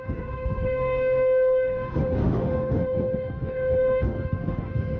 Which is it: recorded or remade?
remade